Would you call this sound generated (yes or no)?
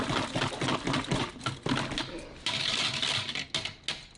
no